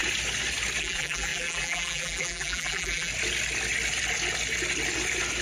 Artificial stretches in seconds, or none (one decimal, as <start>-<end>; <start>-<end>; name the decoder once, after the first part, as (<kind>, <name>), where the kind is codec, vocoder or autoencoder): 0.8-3.1 (vocoder, BigVGAN v2)